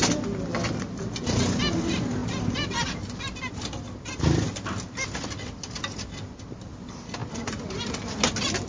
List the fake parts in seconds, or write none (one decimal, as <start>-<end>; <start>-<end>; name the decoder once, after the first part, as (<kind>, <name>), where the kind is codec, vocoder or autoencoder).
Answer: none